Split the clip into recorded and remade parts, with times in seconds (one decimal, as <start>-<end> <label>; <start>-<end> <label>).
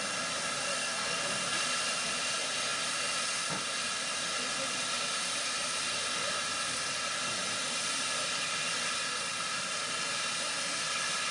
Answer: 0.0-0.7 recorded; 0.7-1.2 remade; 1.2-11.3 recorded